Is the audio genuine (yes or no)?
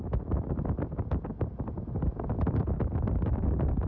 yes